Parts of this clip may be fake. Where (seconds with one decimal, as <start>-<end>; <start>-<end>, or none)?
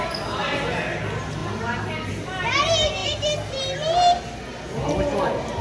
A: none